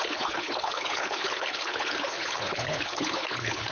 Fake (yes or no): yes